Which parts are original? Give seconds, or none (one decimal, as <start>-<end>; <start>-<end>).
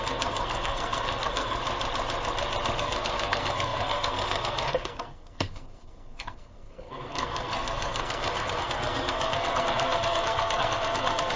1.6-2.8